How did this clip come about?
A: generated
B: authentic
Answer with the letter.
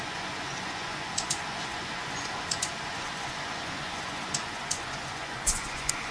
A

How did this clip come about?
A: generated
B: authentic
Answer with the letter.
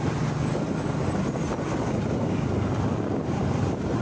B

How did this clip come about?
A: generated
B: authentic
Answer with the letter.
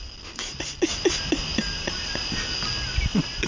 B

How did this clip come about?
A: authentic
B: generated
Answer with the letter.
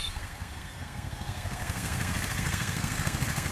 B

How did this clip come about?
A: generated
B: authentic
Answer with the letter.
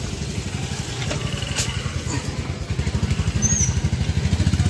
B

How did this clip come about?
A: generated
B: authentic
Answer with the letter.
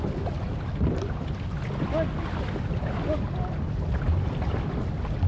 B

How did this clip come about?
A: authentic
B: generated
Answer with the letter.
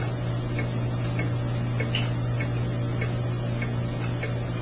A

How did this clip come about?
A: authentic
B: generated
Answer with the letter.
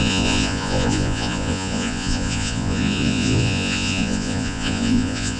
B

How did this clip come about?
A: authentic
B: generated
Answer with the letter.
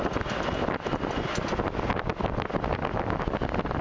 A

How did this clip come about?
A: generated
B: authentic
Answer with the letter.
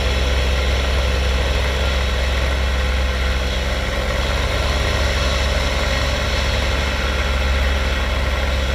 B